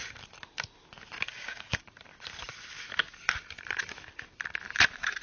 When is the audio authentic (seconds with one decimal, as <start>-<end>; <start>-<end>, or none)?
0.0-1.3; 1.8-5.2